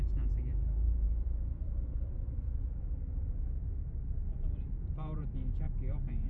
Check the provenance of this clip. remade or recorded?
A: remade